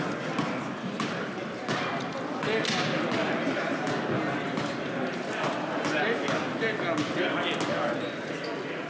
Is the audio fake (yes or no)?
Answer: no